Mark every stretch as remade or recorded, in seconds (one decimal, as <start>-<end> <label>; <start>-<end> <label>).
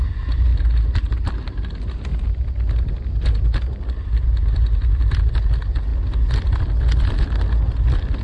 0.0-0.5 recorded; 0.5-1.3 remade; 1.3-8.2 recorded